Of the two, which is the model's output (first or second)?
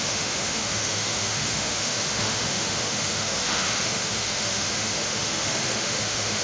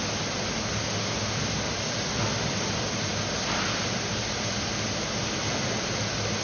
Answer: first